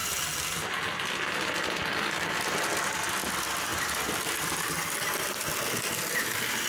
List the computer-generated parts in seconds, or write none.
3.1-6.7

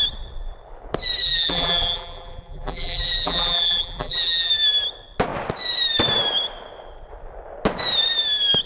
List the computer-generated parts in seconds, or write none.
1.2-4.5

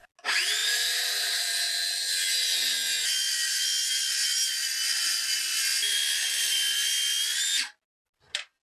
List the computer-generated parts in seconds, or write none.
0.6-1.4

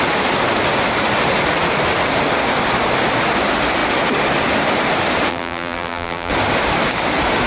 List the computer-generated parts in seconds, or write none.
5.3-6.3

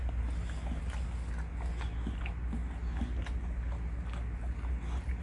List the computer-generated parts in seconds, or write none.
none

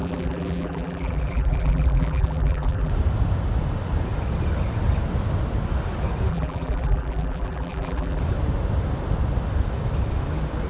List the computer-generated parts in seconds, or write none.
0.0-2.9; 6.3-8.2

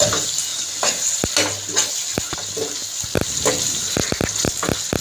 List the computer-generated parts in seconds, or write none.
none

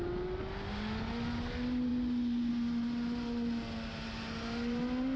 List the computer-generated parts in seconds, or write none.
none